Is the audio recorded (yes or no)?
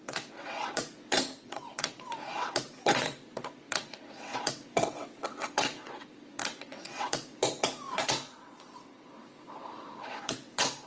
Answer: no